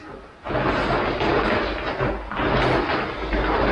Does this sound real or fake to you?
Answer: real